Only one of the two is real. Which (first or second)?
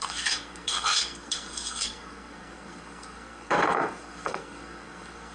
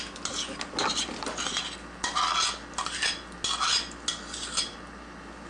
second